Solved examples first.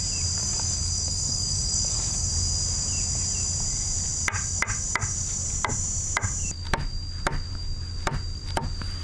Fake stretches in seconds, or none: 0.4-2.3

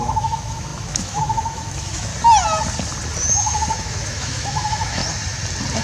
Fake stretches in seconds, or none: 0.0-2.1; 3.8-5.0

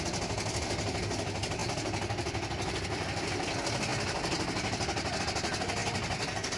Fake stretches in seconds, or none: 1.6-3.2

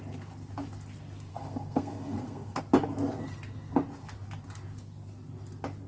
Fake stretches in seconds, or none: 1.3-2.6